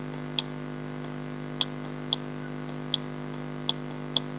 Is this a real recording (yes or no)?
yes